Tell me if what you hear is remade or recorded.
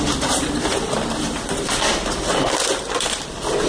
remade